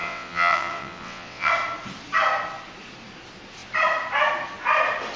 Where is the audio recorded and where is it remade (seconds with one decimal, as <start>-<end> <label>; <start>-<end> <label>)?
0.0-1.5 remade; 1.5-5.2 recorded